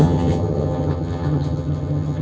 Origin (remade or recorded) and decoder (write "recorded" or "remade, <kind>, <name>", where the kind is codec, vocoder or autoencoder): remade, vocoder, HiFi-GAN